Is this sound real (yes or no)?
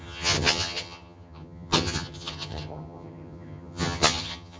no